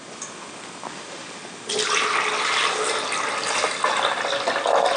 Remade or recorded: recorded